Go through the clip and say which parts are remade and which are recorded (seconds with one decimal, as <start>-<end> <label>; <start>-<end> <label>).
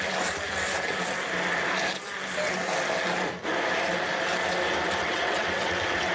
0.0-5.0 recorded; 5.0-6.1 remade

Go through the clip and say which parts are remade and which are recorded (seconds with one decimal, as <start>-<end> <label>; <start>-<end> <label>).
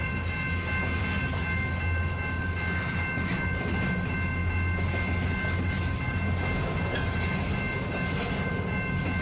0.0-9.2 recorded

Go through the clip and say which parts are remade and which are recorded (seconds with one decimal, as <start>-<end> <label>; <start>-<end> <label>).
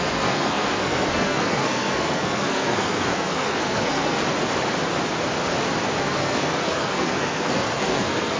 0.0-4.2 remade; 4.2-6.0 recorded; 6.0-8.4 remade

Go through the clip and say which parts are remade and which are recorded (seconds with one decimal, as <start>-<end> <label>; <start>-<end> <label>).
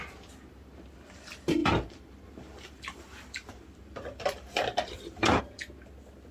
0.0-1.6 recorded; 1.6-5.4 remade; 5.4-6.3 recorded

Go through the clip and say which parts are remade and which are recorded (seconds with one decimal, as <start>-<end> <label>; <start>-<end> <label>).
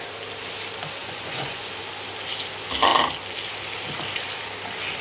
0.0-1.0 recorded; 1.0-1.7 remade; 1.7-5.0 recorded